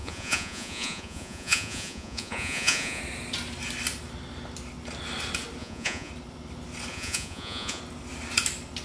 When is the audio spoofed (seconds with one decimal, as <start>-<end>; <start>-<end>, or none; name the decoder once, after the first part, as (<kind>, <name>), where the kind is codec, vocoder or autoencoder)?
0.0-3.0 (vocoder, Vocos); 5.6-6.1; 6.9-7.8